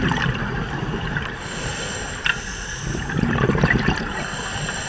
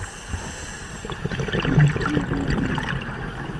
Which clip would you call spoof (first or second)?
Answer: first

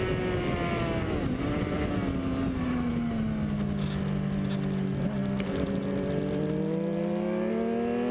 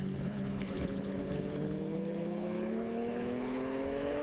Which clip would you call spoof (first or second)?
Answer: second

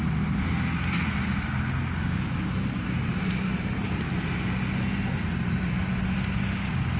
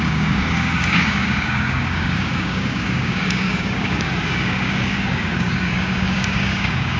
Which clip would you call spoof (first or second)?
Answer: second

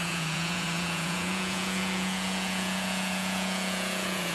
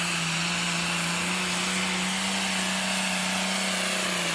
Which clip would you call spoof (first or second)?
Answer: first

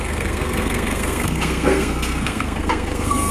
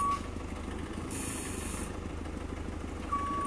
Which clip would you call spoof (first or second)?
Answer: first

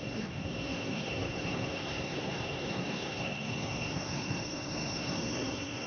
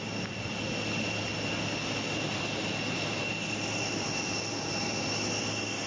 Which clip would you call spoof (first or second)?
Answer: first